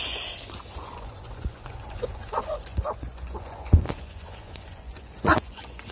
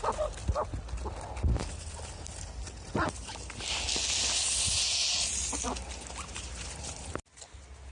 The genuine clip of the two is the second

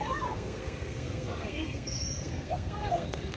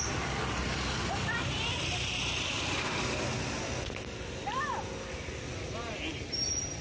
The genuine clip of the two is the second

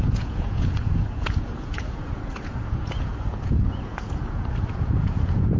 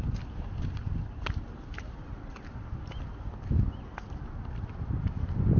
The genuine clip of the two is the second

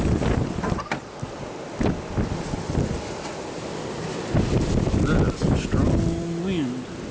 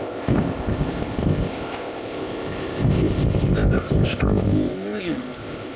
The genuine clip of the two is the first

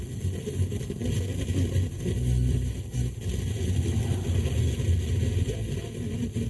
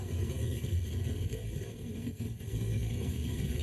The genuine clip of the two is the first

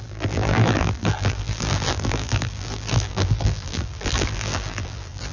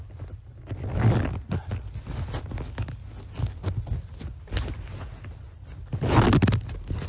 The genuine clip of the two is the second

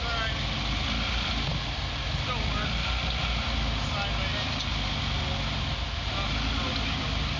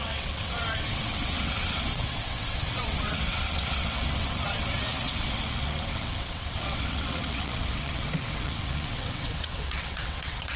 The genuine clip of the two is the first